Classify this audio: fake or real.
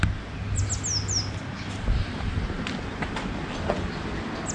real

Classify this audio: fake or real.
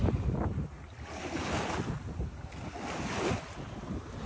real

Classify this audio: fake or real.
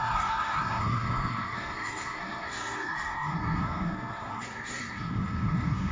fake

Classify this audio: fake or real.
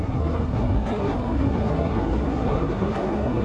fake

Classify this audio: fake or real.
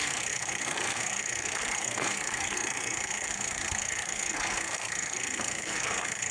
fake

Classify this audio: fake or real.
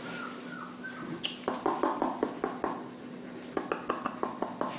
real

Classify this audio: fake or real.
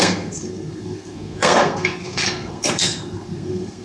fake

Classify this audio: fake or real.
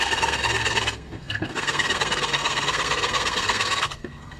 fake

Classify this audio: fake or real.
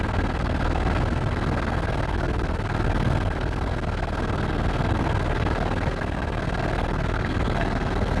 fake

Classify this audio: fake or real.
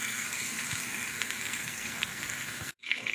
fake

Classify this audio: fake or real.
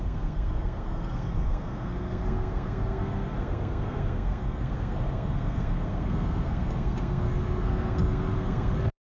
fake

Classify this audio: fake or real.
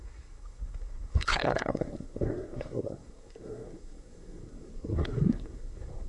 fake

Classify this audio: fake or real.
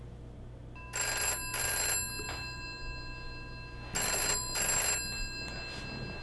real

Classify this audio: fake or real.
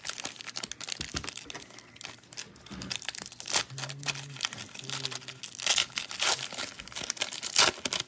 real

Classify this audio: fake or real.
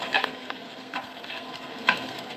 fake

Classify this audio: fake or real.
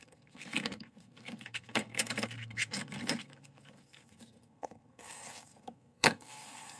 fake